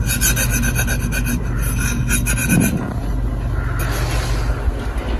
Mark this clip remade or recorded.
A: recorded